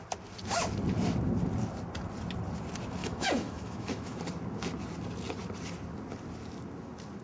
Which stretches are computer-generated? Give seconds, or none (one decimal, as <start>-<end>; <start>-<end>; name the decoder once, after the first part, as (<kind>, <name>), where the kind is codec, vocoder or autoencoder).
3.0-4.2 (autoencoder, DAC-VAE)